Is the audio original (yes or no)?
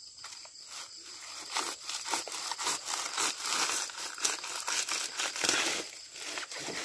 yes